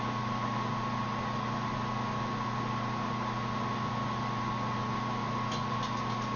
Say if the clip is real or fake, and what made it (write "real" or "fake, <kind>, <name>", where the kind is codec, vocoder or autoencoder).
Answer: real